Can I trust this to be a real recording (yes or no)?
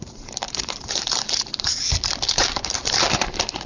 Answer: no